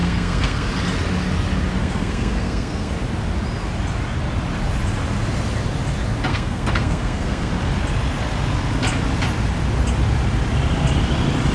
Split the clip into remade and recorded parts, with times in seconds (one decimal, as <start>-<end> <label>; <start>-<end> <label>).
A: 0.0-0.7 remade; 0.7-1.8 recorded; 1.8-2.9 remade; 2.9-6.3 recorded; 6.3-7.5 remade; 7.5-11.5 recorded